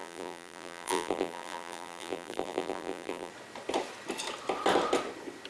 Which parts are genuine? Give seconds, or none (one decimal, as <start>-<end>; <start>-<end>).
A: 3.3-5.5